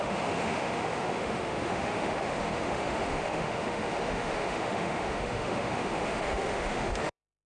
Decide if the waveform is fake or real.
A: fake